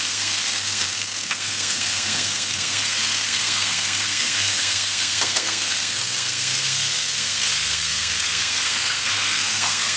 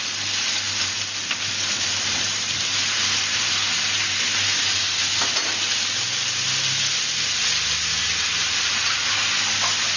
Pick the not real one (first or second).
first